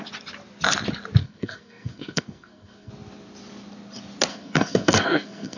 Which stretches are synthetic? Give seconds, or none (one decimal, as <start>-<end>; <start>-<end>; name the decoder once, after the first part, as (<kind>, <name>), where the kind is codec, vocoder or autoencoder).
1.2-2.9 (codec, SNAC); 4.3-5.6